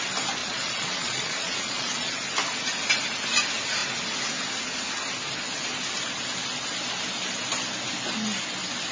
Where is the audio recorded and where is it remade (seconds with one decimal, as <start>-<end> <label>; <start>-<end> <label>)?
0.0-0.4 recorded; 0.4-2.1 remade; 2.1-8.9 recorded